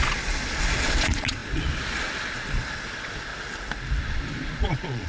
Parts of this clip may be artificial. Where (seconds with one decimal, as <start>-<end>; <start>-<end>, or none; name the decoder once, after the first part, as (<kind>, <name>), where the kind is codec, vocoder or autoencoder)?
0.0-3.3 (vocoder, Vocos); 4.0-5.1